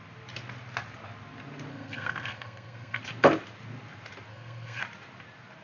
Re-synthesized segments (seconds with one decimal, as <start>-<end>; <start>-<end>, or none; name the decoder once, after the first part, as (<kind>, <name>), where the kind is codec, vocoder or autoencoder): 1.7-3.0 (codec, SNAC); 4.3-4.8